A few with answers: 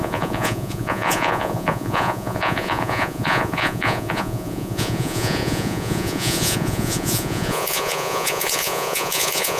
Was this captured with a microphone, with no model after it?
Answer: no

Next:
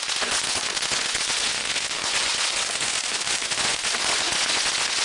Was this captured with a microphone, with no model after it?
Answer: no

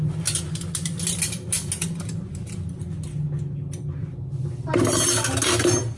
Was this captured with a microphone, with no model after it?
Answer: yes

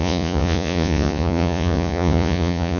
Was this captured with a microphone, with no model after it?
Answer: no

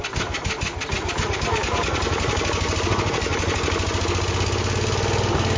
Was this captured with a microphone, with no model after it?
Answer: yes